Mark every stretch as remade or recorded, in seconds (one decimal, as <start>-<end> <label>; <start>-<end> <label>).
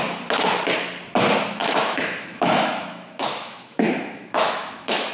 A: 0.0-1.6 recorded; 1.6-5.1 remade